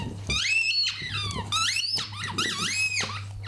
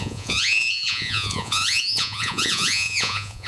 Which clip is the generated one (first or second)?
second